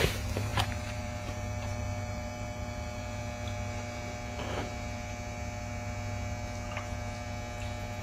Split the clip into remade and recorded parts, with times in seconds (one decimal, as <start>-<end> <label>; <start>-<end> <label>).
0.0-3.2 remade; 3.2-8.0 recorded